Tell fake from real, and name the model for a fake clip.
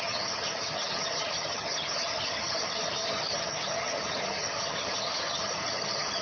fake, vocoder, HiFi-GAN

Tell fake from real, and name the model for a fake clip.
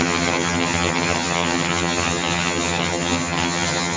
fake, vocoder, HiFi-GAN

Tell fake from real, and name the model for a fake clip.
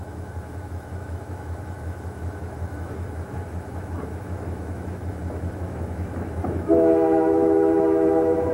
fake, autoencoder, DAC-VAE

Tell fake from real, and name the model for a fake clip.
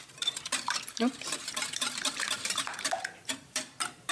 fake, vocoder, BigVGAN v2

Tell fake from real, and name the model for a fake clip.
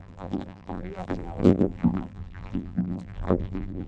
fake, vocoder, BigVGAN v2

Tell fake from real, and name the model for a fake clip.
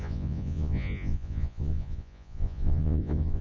fake, vocoder, Vocos